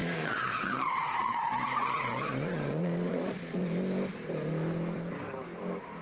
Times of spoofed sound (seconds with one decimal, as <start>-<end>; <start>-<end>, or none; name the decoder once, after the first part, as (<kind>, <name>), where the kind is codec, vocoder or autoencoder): 0.0-3.6 (vocoder, Vocos)